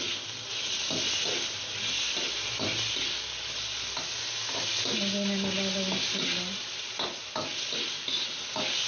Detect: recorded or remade recorded